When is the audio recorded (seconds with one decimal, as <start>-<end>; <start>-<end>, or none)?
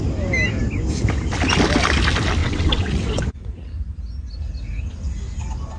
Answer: 0.0-2.4; 3.2-5.8